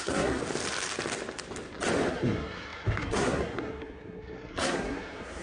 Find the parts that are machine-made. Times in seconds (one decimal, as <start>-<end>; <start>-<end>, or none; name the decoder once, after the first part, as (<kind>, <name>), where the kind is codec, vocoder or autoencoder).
0.0-0.4 (codec, SNAC); 2.1-5.4